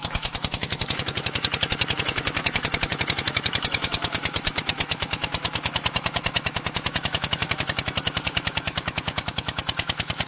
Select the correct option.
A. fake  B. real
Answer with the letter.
A